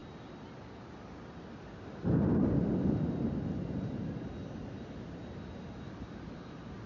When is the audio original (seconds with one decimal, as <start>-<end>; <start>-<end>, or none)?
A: 0.0-6.9